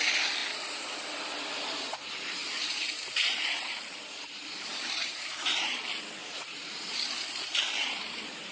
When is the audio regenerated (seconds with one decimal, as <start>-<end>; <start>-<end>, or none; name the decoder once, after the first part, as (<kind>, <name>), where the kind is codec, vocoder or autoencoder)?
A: 0.4-0.9 (vocoder, BigVGAN v2); 2.4-5.8; 6.2-6.8; 7.8-8.5

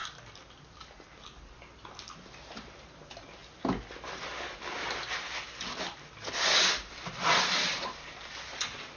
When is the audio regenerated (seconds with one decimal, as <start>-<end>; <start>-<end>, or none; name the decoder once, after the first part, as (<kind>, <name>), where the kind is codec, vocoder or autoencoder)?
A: none

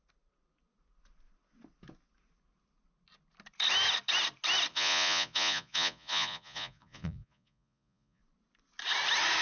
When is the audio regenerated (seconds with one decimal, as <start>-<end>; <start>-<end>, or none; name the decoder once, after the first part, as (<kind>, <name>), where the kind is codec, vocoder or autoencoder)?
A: 4.7-8.2 (vocoder, Vocos)

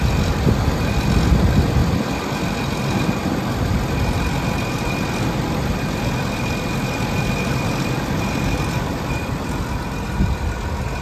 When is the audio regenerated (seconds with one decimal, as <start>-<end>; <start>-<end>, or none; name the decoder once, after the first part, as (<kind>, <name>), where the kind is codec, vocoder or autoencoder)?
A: none

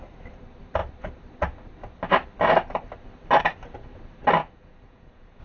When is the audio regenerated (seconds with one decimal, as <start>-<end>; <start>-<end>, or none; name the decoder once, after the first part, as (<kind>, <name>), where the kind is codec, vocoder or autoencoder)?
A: 4.4-5.4 (vocoder, Vocos)

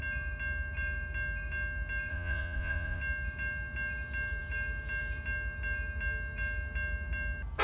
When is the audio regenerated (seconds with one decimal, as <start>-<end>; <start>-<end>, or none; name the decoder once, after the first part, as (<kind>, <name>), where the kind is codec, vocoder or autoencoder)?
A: 2.1-3.0 (vocoder, Vocos)